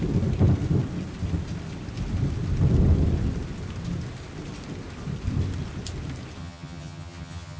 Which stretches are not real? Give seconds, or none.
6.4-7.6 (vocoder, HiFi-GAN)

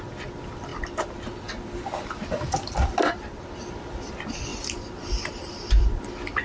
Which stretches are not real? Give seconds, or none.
none

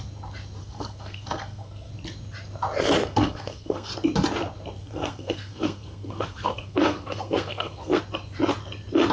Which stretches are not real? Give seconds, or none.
0.6-1.9 (codec, SNAC); 3.0-3.9; 4.8-8.0

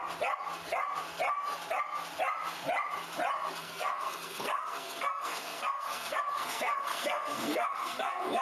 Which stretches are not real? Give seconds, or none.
3.6-8.4 (codec, SNAC)

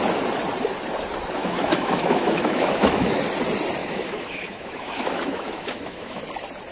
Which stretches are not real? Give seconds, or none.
1.4-3.2 (autoencoder, DAC-VAE); 3.8-6.2

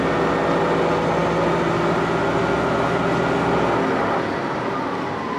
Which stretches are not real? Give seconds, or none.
none

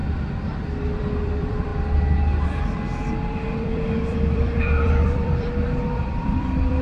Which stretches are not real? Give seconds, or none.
0.7-1.7 (vocoder, BigVGAN v2); 3.1-6.8

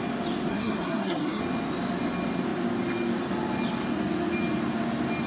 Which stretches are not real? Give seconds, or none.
0.5-1.4 (codec, SNAC)